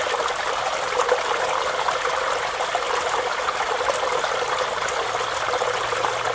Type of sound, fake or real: real